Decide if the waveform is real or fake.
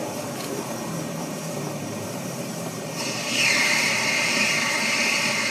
fake